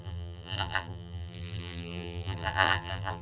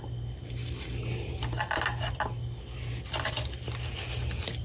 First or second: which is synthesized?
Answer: first